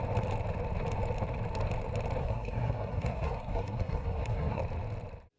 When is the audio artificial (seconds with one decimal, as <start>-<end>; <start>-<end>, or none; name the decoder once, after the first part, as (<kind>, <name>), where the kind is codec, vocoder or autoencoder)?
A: 2.2-4.6 (codec, SNAC)